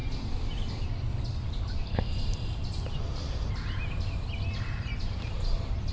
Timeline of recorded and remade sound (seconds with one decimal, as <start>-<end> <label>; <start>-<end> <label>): 0.0-5.9 recorded